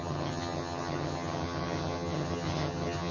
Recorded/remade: remade